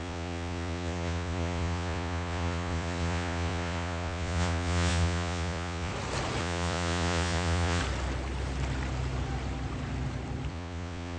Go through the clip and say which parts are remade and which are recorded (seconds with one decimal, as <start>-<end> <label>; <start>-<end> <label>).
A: 0.0-5.9 remade; 5.9-6.4 recorded; 6.4-7.8 remade; 7.8-10.5 recorded; 10.5-11.2 remade